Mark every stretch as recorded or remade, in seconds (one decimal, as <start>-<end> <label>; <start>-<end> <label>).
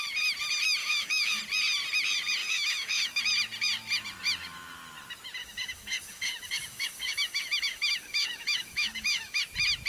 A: 0.0-0.8 recorded; 0.8-1.4 remade; 1.4-2.4 recorded; 2.4-3.2 remade; 3.2-5.4 recorded; 5.4-9.4 remade; 9.4-9.9 recorded